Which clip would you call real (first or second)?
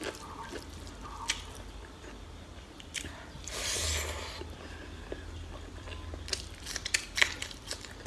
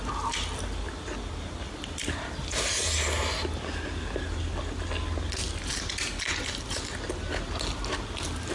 second